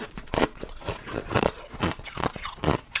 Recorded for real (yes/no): no